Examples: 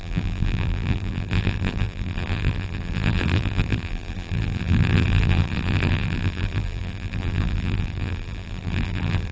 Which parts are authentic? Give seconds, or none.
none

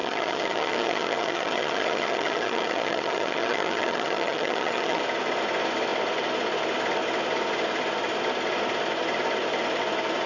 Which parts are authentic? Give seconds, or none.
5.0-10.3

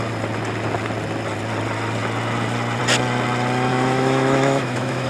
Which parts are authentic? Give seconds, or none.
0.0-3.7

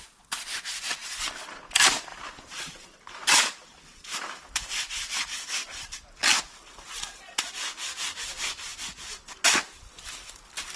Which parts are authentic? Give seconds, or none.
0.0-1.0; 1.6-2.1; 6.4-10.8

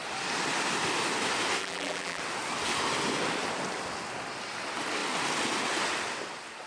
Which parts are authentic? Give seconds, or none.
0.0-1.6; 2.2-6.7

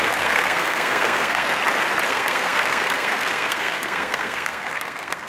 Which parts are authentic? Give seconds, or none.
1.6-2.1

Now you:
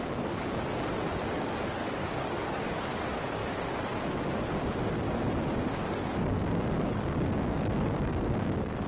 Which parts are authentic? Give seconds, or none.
0.7-1.3; 3.4-5.7

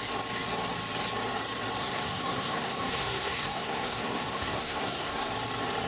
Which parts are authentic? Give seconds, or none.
0.0-1.8; 5.3-5.9